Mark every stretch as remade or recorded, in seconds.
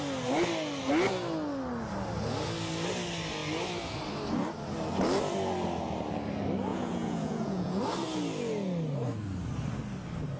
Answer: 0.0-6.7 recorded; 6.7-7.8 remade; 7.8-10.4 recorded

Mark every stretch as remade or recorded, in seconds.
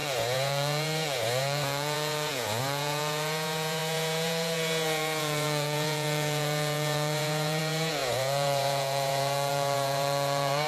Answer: 0.0-10.7 remade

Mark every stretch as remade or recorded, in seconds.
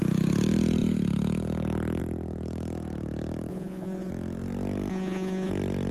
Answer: 0.0-3.5 recorded; 3.5-4.1 remade; 4.1-4.9 recorded; 4.9-5.5 remade; 5.5-5.9 recorded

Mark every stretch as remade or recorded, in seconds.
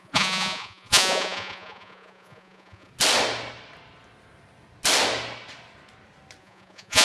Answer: 0.0-2.9 remade; 2.9-6.4 recorded; 6.4-7.0 remade